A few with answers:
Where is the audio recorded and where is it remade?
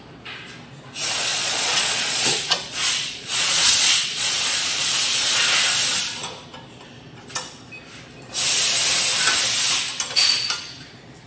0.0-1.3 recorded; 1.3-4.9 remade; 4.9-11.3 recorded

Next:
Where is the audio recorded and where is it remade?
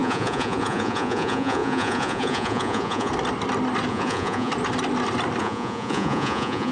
0.0-3.1 remade; 3.1-3.9 recorded; 3.9-4.5 remade; 4.5-5.4 recorded; 5.4-6.7 remade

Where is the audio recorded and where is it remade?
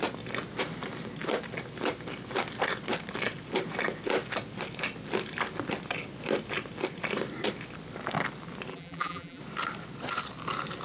0.0-8.7 recorded; 8.7-9.4 remade; 9.4-10.8 recorded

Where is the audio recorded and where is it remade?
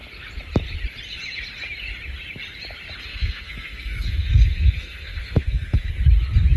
0.0-3.1 recorded; 3.1-5.9 remade; 5.9-6.6 recorded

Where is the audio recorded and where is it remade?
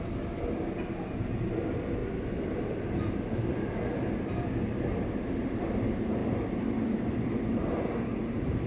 0.0-8.7 recorded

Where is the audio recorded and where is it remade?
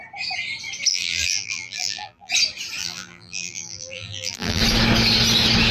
0.0-0.9 recorded; 0.9-2.3 remade; 2.3-2.8 recorded; 2.8-4.6 remade; 4.6-5.7 recorded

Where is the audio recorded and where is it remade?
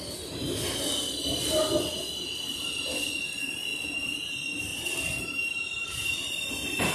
0.0-4.7 recorded; 4.7-6.5 remade; 6.5-6.9 recorded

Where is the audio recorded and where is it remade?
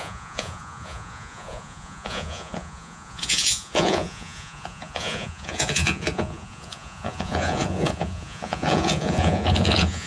0.0-10.1 remade